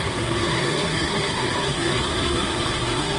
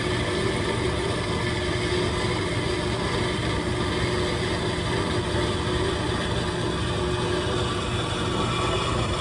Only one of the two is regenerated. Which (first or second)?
first